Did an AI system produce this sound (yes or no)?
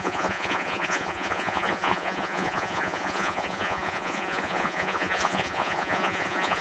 yes